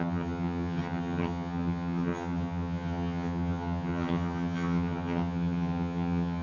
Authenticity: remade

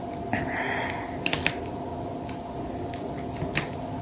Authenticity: recorded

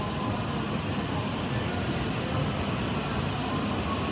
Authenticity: recorded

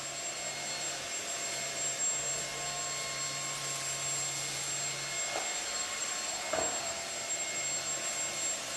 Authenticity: recorded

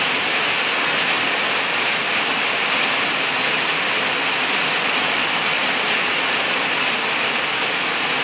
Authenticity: recorded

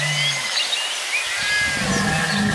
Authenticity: recorded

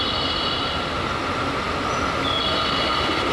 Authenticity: recorded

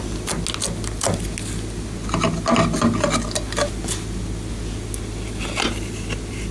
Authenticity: recorded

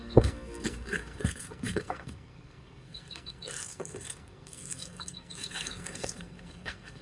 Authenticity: remade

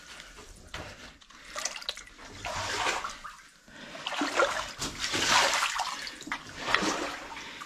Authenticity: recorded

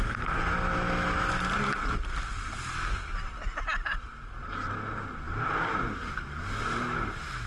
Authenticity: recorded